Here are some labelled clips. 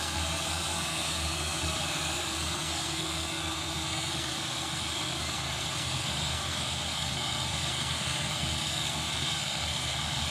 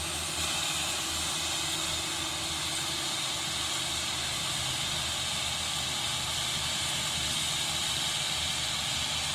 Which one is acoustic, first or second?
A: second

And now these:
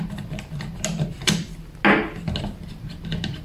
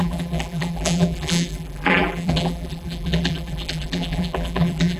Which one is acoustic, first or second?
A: first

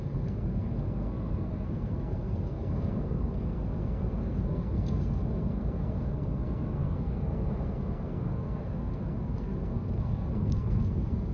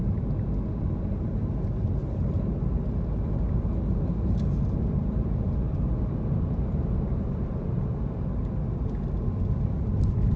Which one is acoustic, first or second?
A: second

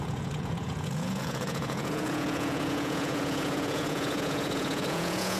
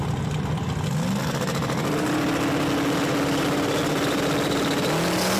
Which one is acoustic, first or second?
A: second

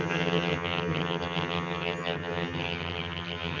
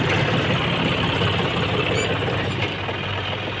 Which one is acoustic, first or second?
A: second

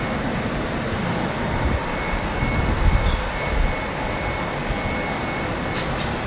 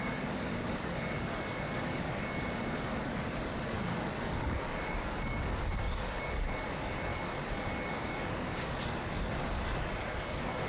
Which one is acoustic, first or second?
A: first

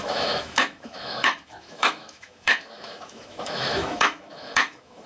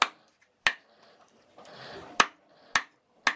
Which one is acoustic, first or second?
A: second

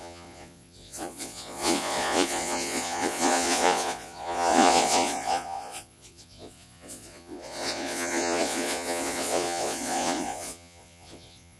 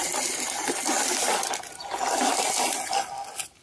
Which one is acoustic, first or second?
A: second